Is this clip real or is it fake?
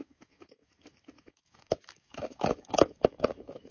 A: fake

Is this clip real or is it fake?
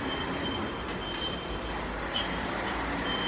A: real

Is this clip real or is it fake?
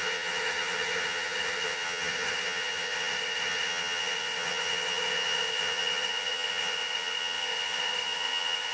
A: fake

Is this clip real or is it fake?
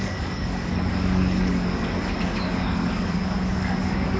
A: fake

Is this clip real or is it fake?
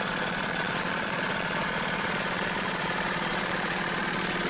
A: fake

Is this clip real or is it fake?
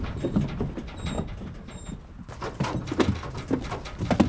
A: real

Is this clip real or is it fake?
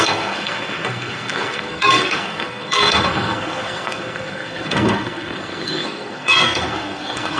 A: fake